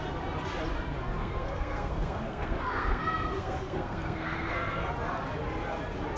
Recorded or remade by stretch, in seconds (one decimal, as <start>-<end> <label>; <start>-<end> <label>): 0.0-1.2 recorded; 1.2-4.9 remade; 4.9-6.2 recorded